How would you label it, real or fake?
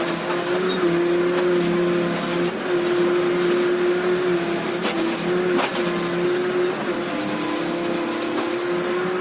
real